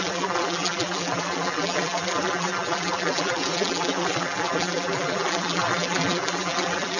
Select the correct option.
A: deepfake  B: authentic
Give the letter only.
A